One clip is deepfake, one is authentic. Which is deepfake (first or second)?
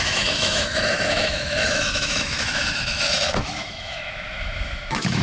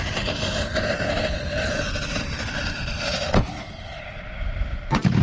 first